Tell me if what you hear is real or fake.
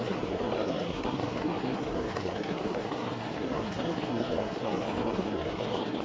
fake